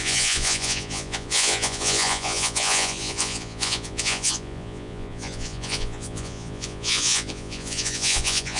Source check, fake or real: fake